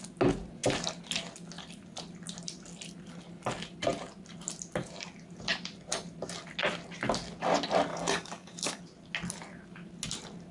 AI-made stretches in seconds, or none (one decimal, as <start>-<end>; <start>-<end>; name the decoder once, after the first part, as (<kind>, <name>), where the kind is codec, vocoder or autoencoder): 7.9-8.8 (codec, DAC)